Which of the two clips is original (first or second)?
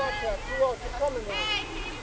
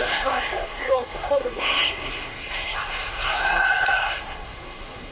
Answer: first